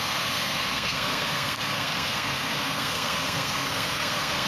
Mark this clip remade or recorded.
remade